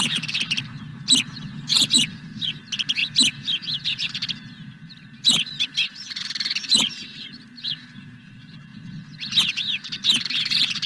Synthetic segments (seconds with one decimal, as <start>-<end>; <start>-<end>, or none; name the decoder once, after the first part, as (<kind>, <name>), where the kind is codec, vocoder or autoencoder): 0.0-3.0 (vocoder, BigVGAN v2); 3.8-4.2; 5.1-8.7; 9.4-10.9